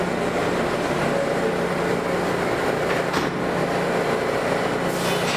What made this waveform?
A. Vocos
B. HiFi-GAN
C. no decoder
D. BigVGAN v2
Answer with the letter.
C